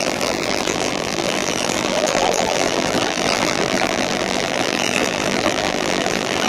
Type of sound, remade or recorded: remade